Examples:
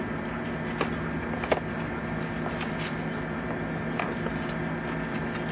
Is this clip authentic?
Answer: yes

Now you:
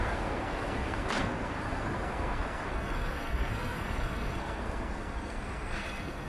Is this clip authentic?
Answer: no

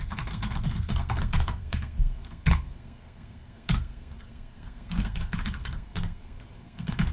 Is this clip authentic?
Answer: no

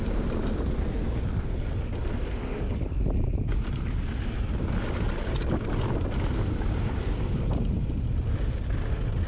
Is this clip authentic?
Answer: yes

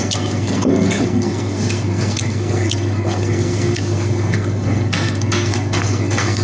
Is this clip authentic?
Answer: no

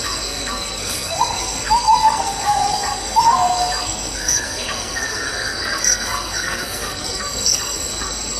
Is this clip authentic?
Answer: no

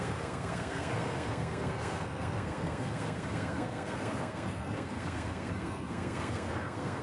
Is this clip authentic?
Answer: no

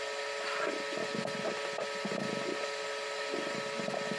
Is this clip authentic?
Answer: yes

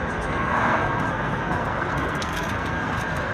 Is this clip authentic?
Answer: no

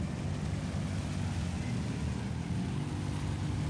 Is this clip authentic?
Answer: yes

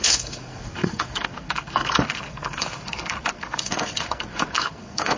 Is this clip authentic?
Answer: no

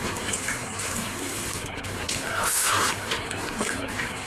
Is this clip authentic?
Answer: no